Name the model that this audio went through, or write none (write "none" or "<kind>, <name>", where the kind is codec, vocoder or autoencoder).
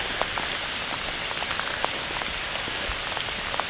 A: none